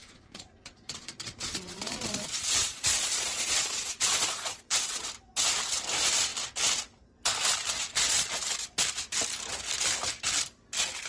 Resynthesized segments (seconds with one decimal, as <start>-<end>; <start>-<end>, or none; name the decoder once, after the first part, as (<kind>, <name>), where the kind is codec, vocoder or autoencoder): 0.0-5.1 (vocoder, Vocos)